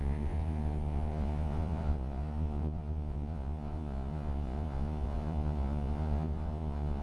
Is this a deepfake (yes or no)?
yes